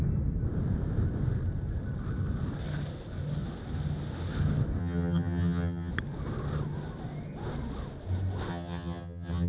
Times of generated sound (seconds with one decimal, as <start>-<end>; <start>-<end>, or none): 4.8-5.9; 8.5-9.5